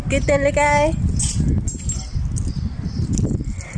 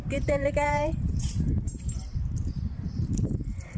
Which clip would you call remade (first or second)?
second